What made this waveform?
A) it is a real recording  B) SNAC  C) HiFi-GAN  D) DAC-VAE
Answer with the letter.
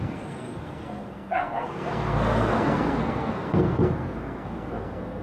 B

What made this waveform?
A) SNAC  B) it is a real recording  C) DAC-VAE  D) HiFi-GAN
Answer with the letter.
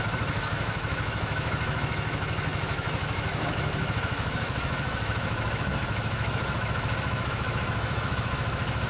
C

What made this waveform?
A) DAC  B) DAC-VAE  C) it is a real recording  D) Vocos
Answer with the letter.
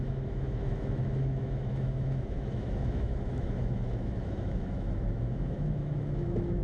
B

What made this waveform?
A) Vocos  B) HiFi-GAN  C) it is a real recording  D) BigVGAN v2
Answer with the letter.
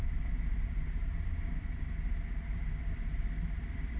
D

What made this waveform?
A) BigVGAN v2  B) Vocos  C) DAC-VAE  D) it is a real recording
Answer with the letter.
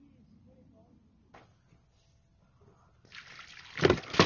D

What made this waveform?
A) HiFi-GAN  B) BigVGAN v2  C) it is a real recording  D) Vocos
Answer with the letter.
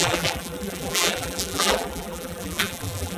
B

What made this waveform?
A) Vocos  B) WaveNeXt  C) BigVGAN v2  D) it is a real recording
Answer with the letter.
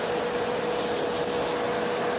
D